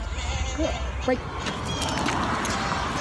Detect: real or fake real